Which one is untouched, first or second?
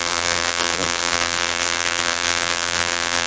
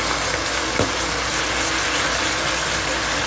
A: second